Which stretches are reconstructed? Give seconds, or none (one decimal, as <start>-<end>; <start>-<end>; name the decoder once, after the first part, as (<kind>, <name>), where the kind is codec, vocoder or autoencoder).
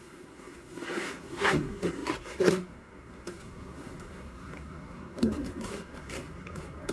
0.0-6.9 (codec, SNAC)